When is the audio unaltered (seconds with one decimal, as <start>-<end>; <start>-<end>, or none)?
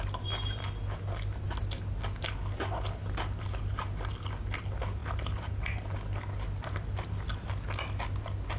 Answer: 0.0-8.6